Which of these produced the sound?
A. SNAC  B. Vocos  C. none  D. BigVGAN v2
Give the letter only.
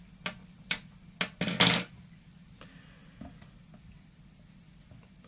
C